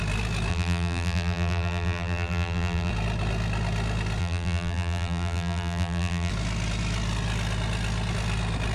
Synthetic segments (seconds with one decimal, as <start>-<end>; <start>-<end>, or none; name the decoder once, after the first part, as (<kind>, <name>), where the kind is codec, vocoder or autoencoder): 0.5-2.9 (vocoder, BigVGAN v2); 4.2-6.3

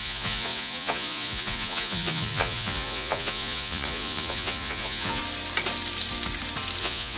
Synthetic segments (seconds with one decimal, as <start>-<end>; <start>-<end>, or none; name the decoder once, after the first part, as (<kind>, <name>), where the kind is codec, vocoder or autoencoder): 0.0-5.2 (vocoder, Vocos); 6.8-7.2

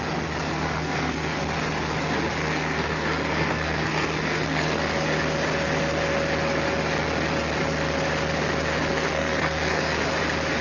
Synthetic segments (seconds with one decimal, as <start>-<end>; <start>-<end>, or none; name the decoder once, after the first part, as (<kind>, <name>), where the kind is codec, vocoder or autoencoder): 0.5-1.4 (codec, SNAC); 2.4-4.8; 8.9-9.8

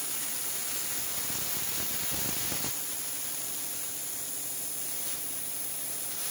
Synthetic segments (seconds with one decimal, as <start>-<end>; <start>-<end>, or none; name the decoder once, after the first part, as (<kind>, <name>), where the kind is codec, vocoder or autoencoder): none

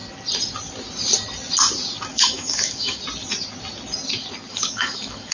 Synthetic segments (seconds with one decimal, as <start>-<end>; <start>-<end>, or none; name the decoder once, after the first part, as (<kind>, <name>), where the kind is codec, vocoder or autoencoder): 2.1-3.0 (autoencoder, DAC-VAE); 4.5-5.3

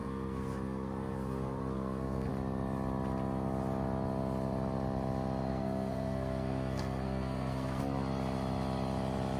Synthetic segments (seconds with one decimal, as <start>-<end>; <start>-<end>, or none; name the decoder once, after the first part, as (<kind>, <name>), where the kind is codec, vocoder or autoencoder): 0.0-2.3 (codec, SNAC); 5.5-7.8

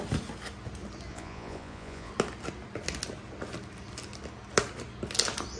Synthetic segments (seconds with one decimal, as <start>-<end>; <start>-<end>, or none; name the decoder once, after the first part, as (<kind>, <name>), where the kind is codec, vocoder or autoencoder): 1.1-2.1 (vocoder, Vocos)